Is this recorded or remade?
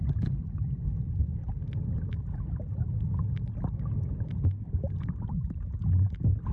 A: recorded